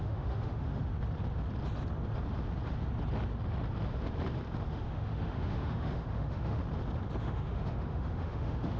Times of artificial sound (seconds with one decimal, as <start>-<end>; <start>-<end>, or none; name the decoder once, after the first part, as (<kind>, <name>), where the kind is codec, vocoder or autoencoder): 0.0-0.8 (autoencoder, DAC-VAE); 4.7-6.6; 7.2-8.8